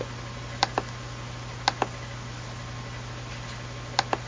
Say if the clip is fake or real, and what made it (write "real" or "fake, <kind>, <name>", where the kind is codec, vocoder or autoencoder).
real